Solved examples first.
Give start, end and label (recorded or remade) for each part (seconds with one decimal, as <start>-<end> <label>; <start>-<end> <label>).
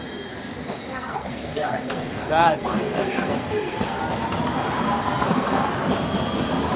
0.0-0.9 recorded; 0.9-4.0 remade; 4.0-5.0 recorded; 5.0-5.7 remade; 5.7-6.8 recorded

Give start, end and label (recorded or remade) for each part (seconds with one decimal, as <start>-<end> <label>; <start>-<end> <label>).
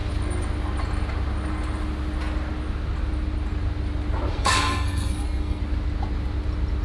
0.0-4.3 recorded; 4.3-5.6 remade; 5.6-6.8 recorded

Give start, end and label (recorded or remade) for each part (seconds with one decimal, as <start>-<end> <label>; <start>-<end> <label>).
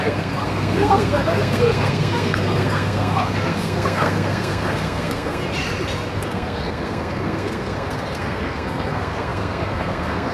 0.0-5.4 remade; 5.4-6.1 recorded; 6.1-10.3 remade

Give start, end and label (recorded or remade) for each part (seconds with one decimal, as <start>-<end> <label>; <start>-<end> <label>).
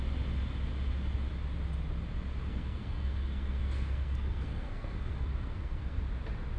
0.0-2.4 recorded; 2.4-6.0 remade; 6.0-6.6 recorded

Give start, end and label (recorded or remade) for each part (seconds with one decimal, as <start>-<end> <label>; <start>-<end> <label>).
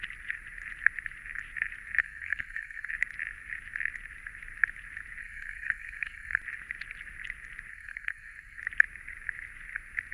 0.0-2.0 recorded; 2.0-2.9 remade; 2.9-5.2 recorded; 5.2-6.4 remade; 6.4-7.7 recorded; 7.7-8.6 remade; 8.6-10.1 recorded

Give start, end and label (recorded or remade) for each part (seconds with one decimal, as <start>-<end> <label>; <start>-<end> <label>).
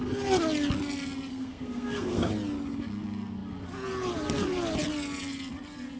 0.0-1.3 recorded; 1.3-2.3 remade; 2.3-6.0 recorded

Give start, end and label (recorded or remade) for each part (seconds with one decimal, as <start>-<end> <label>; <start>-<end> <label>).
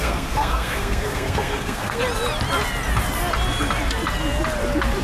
0.0-2.0 remade; 2.0-5.0 recorded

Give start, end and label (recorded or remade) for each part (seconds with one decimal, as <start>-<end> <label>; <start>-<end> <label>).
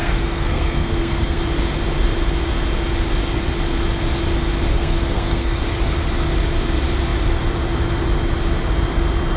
0.0-1.4 remade; 1.4-4.7 recorded; 4.7-5.6 remade; 5.6-9.4 recorded